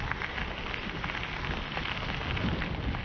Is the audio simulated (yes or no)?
no